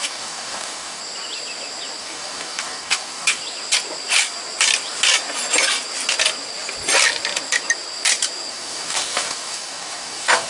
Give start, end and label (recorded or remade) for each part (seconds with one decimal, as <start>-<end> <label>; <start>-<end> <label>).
0.0-1.0 remade; 1.0-2.0 recorded; 2.0-3.4 remade; 3.4-8.5 recorded; 8.5-10.5 remade